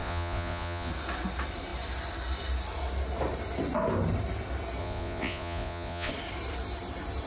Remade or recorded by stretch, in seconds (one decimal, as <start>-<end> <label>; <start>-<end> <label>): 0.0-0.9 remade; 0.9-4.8 recorded; 4.8-6.1 remade; 6.1-7.3 recorded